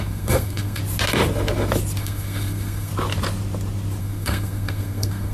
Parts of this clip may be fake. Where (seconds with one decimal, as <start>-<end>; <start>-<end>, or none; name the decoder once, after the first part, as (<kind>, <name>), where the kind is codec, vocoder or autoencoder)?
0.0-0.8 (codec, SNAC); 2.0-2.9; 4.0-5.3